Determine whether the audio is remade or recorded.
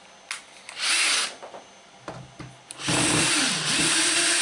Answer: recorded